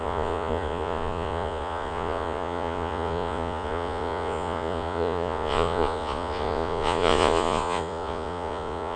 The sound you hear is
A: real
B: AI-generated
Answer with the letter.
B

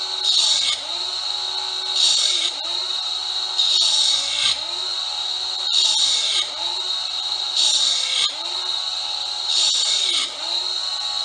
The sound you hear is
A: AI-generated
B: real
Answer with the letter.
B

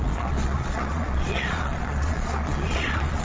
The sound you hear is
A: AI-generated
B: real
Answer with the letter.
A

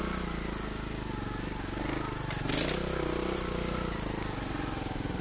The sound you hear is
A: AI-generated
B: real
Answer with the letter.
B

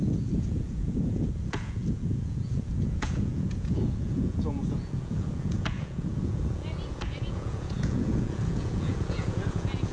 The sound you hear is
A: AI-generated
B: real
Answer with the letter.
A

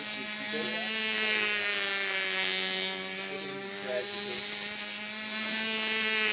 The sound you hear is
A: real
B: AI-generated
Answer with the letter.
A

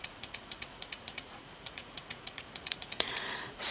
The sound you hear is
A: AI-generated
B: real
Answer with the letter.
A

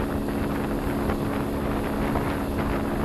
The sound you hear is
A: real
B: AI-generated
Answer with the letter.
A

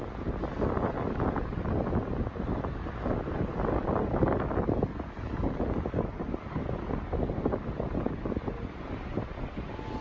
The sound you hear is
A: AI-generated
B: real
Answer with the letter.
B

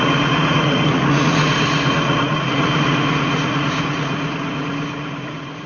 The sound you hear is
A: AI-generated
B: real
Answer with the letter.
A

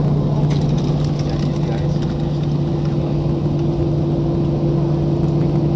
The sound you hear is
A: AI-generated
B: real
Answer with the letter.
B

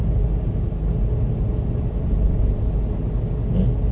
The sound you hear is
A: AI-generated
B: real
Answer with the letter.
B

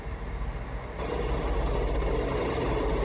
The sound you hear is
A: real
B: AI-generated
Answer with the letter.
A